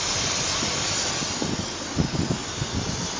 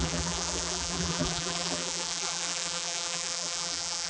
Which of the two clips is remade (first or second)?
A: second